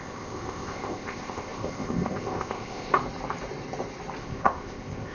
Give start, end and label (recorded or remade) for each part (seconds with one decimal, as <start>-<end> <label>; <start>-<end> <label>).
0.0-2.9 remade; 2.9-4.2 recorded; 4.2-5.1 remade